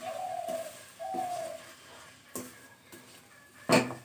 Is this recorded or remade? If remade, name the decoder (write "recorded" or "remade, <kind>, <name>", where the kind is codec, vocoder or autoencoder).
recorded